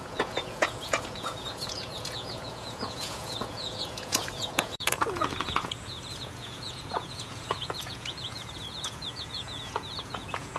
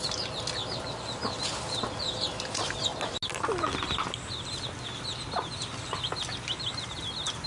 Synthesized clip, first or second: first